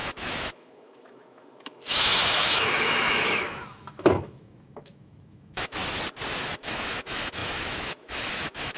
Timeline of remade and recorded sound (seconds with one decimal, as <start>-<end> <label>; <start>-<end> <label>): 0.0-5.8 remade; 5.8-6.4 recorded; 6.4-8.8 remade